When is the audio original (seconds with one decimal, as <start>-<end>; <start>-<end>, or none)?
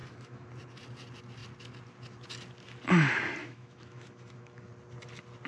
0.5-3.4; 4.7-5.5